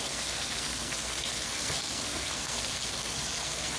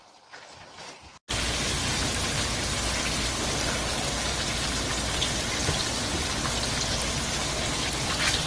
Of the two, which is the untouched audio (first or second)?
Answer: second